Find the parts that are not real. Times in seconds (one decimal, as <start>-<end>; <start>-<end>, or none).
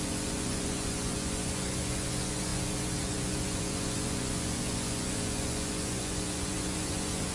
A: 0.0-7.3